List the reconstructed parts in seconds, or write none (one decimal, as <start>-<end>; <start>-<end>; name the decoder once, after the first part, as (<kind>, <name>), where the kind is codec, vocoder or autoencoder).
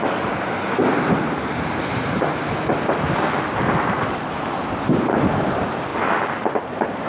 none